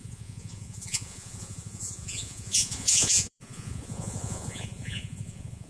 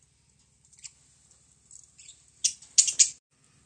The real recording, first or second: second